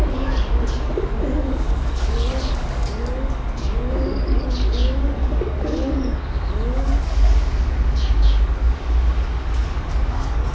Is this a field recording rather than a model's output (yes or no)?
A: no